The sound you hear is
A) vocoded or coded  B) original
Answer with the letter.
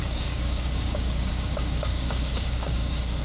A